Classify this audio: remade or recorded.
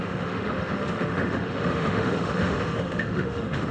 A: remade